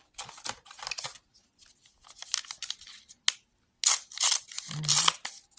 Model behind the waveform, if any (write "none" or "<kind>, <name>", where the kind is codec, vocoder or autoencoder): none